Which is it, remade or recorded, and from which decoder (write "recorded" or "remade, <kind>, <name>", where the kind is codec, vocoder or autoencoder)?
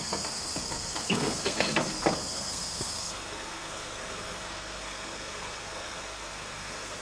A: remade, codec, SNAC